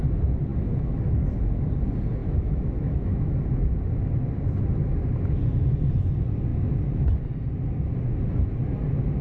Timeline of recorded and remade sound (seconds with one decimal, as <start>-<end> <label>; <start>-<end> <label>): 0.0-0.5 recorded; 0.5-1.0 remade; 1.0-2.2 recorded; 2.2-3.3 remade; 3.3-9.2 recorded